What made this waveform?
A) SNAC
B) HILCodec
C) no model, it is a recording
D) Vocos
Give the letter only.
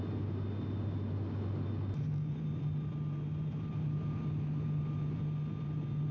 C